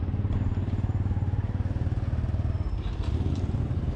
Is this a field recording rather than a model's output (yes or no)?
yes